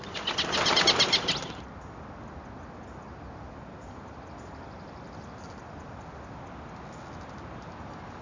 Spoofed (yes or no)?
no